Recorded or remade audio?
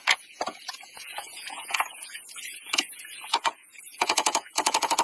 remade